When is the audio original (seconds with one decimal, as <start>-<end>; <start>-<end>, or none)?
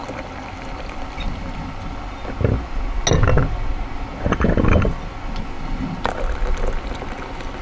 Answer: 0.0-7.6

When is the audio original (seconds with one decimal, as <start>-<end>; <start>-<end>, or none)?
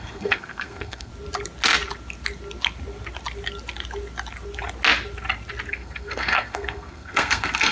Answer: 1.1-5.7